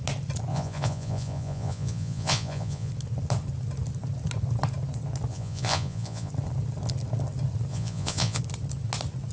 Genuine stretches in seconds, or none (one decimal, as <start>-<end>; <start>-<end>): 0.0-0.5; 2.9-5.3; 6.3-7.7; 8.4-9.3